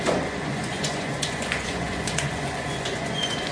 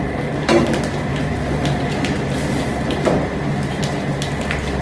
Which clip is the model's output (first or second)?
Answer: first